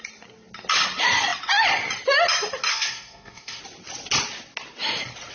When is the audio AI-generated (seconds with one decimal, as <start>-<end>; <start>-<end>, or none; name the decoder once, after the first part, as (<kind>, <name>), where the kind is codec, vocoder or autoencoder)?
2.7-3.6 (codec, SNAC)